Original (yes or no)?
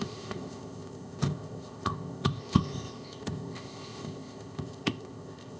no